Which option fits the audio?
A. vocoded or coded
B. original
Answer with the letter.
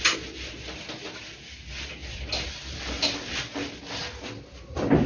B